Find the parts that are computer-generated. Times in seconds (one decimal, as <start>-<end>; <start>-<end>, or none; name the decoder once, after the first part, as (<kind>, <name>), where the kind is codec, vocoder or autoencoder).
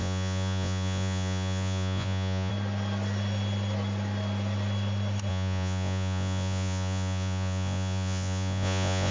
0.0-2.5 (vocoder, Vocos); 5.3-9.1